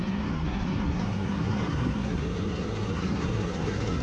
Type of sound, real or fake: fake